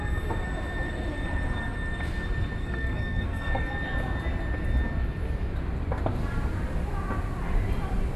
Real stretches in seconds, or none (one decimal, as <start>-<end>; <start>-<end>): 0.0-2.6; 3.7-8.2